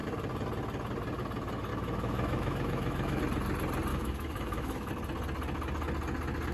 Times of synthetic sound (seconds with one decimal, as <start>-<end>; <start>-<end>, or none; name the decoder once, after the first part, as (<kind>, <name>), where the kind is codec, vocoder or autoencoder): 1.7-3.2 (autoencoder, DAC-VAE); 3.9-4.9